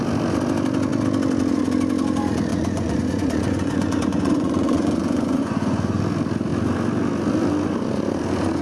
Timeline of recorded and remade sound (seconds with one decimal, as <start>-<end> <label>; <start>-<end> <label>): 0.0-2.5 recorded; 2.5-6.0 remade; 6.0-8.6 recorded